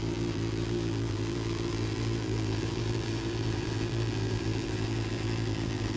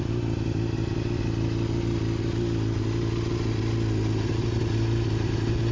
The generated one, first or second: first